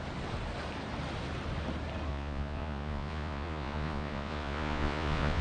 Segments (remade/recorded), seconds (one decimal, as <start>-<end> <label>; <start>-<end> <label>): 0.0-2.1 recorded; 2.1-5.4 remade